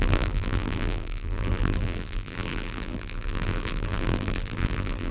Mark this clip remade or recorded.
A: remade